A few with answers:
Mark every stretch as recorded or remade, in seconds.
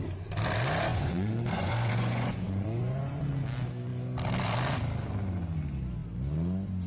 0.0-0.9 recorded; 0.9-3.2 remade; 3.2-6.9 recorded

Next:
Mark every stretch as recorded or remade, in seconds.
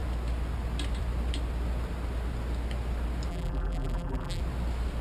0.0-3.3 recorded; 3.3-4.4 remade; 4.4-5.0 recorded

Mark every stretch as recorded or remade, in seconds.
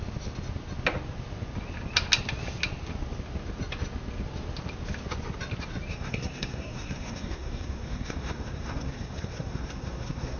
0.0-5.9 recorded; 5.9-10.4 remade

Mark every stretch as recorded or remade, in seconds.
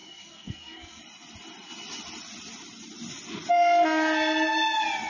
0.0-1.0 remade; 1.0-5.1 recorded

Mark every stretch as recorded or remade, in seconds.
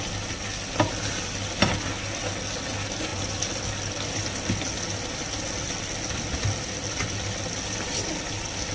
0.0-8.7 recorded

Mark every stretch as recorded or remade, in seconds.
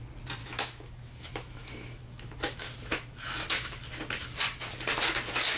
0.0-0.4 recorded; 0.4-3.8 remade; 3.8-5.6 recorded